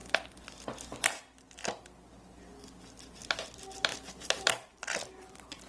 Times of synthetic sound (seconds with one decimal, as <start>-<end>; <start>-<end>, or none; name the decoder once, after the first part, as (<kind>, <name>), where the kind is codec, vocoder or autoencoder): 3.9-5.7 (vocoder, BigVGAN v2)